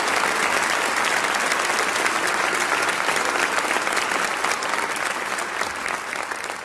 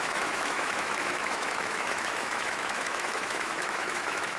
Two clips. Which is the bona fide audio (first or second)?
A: first